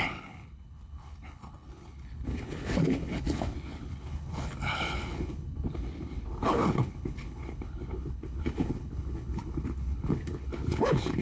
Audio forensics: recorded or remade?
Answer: remade